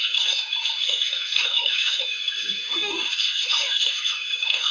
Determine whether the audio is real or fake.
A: fake